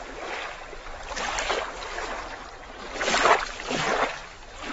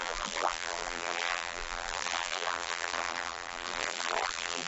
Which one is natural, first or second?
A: first